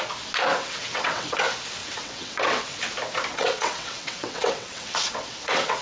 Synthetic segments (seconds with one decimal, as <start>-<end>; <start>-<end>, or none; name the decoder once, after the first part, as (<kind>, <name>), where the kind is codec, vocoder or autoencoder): 0.5-1.4 (vocoder, WaveNeXt); 1.8-2.8; 3.3-5.8